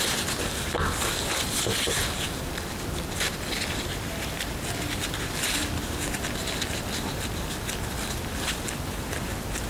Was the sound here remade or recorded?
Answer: remade